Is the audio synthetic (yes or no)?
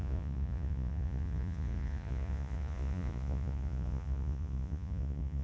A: yes